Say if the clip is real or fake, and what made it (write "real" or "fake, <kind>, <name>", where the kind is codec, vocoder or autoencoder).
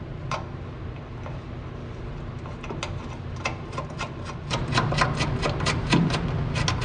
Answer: real